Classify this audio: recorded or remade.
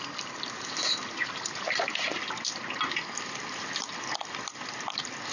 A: recorded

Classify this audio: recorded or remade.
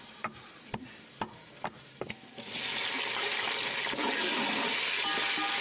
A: recorded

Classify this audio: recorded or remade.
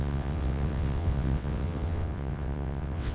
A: remade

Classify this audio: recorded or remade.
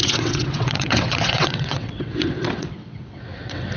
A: remade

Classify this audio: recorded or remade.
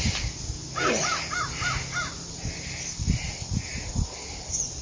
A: recorded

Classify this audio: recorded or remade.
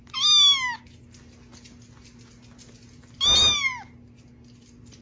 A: recorded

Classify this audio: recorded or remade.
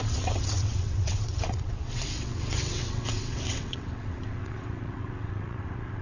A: remade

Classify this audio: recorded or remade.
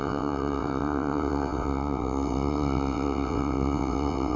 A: remade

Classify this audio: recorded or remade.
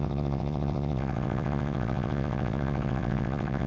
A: remade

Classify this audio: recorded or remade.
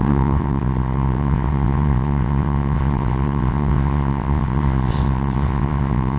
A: remade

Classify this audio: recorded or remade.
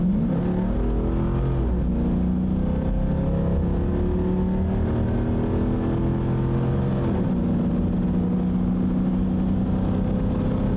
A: recorded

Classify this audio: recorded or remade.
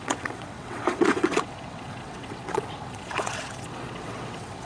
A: remade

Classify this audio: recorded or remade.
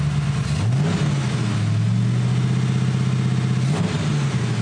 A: recorded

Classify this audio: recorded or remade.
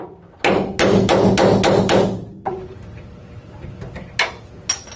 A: recorded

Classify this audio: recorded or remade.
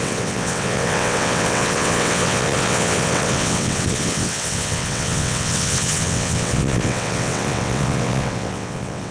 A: remade